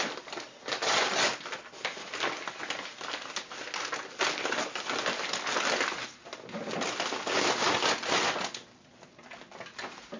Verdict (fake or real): real